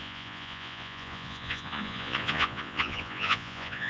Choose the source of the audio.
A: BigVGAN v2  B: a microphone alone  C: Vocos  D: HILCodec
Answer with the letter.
C